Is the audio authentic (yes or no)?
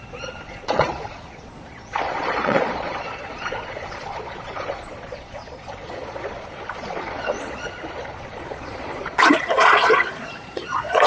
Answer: no